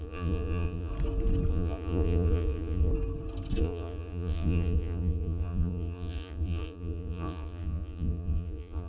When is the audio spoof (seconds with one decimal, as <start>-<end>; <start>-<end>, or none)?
0.0-0.9; 1.5-2.9; 3.6-8.9